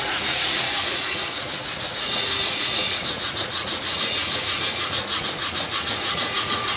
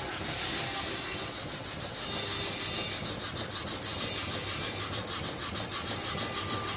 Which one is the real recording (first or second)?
second